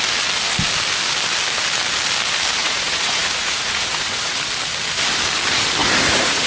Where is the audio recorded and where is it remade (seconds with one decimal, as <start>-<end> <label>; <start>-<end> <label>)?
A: 0.0-2.6 recorded; 2.6-4.4 remade; 4.4-5.8 recorded; 5.8-6.5 remade